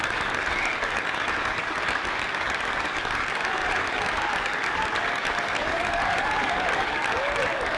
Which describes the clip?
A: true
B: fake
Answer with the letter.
B